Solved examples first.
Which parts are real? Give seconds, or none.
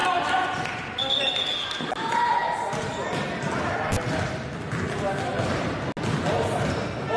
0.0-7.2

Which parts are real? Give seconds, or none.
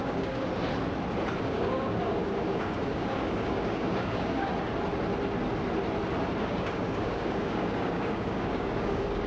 0.5-1.4; 4.5-6.4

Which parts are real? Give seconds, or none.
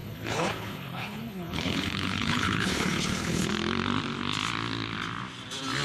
3.5-5.8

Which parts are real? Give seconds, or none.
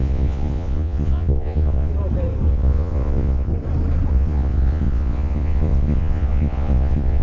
1.9-2.5; 3.5-4.1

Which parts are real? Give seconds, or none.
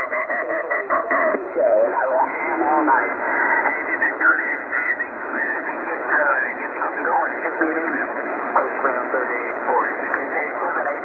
2.4-4.0; 4.6-5.2; 8.7-9.4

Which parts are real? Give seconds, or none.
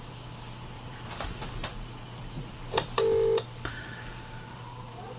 1.7-3.7